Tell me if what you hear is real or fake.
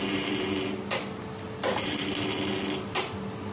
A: real